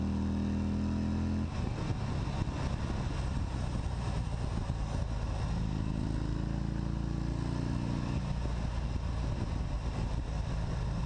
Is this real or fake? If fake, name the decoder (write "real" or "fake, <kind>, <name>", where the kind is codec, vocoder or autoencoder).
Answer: real